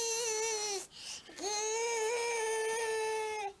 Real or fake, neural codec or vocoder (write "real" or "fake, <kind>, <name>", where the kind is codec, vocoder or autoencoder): real